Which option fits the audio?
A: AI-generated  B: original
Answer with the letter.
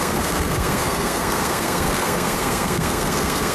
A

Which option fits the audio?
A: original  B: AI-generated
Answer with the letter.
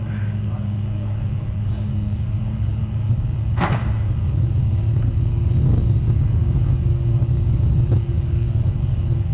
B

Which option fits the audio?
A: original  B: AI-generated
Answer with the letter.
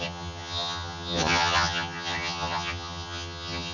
B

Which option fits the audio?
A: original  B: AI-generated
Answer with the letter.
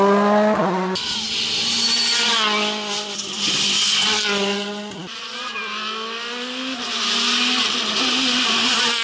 A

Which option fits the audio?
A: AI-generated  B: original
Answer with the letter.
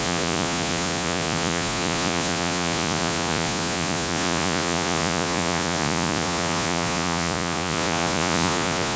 A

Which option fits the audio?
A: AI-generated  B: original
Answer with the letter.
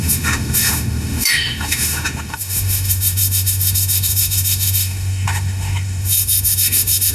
A